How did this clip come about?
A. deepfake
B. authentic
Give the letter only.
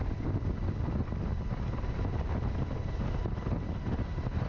B